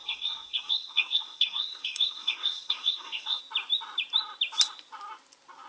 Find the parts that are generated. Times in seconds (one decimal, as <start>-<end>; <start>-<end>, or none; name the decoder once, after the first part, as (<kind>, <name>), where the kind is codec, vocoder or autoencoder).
0.0-3.4 (codec, SNAC)